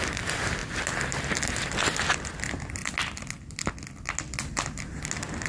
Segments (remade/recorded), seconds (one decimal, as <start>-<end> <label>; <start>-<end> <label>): 0.0-5.5 recorded

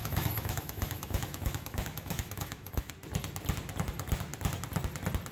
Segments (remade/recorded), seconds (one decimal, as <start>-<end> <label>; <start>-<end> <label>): 0.0-2.9 remade; 2.9-5.3 recorded

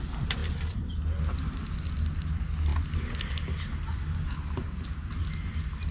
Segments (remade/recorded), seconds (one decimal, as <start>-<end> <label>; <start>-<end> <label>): 0.0-5.9 recorded

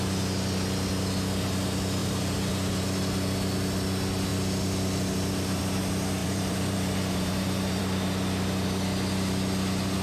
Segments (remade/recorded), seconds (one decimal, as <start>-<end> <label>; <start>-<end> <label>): 0.0-2.0 recorded; 2.0-2.5 remade; 2.5-6.2 recorded; 6.2-7.8 remade; 7.8-10.0 recorded

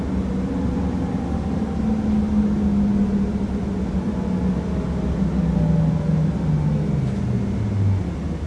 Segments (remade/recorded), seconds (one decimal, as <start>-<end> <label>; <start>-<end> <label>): 0.0-8.5 recorded

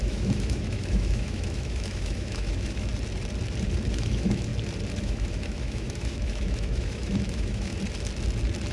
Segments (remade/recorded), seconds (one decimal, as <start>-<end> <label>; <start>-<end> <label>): 0.0-2.9 remade; 2.9-3.9 recorded; 3.9-4.5 remade; 4.5-5.0 recorded; 5.0-7.7 remade; 7.7-8.7 recorded

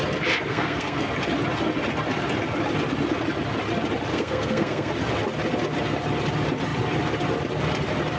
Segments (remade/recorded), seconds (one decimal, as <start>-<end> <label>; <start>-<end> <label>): 0.0-0.5 recorded; 0.5-1.1 remade; 1.1-4.1 recorded; 4.1-4.9 remade; 4.9-8.2 recorded